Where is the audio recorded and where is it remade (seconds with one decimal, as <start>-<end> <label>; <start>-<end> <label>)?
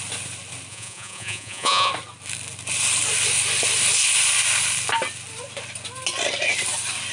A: 0.0-0.7 recorded; 0.7-1.9 remade; 1.9-7.1 recorded